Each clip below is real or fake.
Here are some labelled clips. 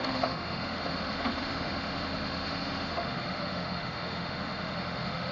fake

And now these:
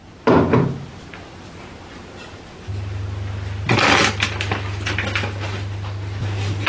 real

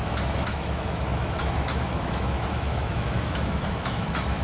fake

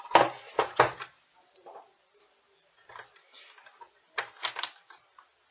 real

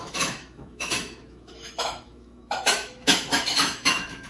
fake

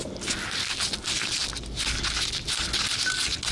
real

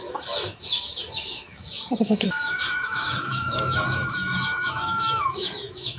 fake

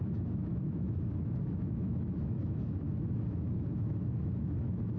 fake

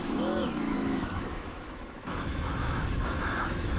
fake